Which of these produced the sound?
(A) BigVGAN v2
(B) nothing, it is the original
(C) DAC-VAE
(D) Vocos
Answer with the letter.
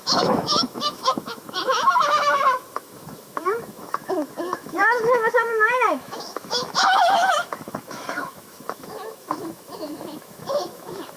C